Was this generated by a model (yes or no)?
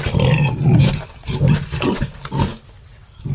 no